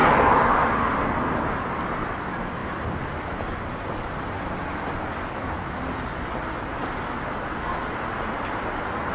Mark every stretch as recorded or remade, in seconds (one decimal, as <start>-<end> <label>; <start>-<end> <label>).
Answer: 0.0-9.1 recorded

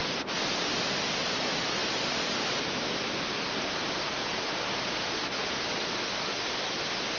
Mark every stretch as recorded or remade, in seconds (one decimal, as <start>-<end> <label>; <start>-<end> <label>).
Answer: 0.0-7.2 recorded